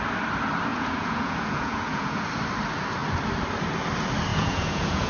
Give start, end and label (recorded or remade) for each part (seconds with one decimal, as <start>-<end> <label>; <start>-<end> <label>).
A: 0.0-0.7 recorded; 0.7-2.3 remade; 2.3-4.3 recorded; 4.3-5.1 remade